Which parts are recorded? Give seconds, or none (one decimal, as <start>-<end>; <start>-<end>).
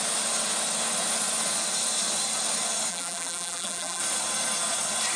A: 0.0-2.9; 4.0-5.2